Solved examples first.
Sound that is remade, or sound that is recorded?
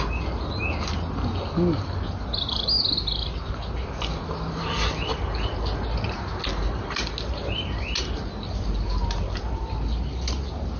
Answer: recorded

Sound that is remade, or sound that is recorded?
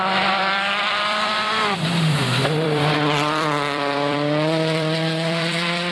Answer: remade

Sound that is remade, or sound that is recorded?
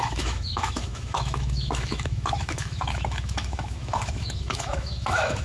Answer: remade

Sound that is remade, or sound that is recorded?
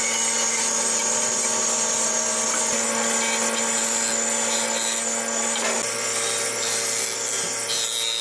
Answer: recorded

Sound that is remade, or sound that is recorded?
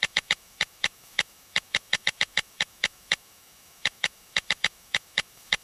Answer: remade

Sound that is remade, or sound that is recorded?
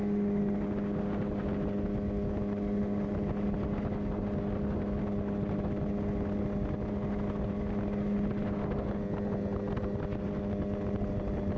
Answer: recorded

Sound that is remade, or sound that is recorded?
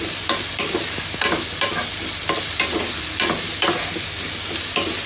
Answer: recorded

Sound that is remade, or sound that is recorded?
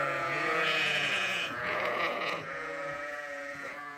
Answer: remade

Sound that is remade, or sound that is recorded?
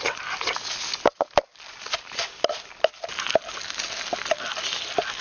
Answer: recorded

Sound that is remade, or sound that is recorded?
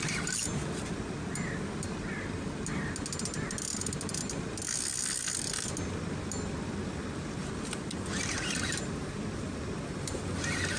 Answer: recorded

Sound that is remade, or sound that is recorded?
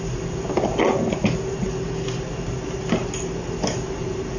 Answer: recorded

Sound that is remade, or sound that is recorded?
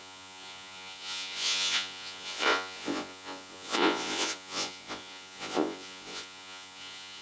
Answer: remade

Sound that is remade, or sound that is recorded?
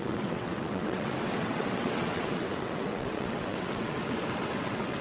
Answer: remade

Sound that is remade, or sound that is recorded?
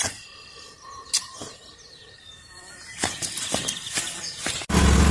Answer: recorded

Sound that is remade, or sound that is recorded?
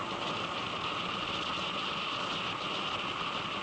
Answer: recorded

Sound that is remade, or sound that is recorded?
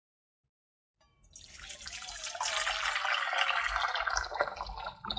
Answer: recorded